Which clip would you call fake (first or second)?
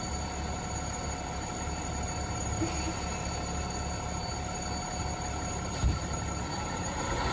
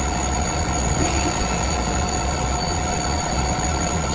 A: second